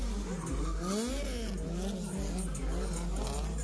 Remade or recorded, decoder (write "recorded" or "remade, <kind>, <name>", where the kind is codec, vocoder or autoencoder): recorded